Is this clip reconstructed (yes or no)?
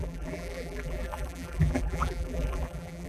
yes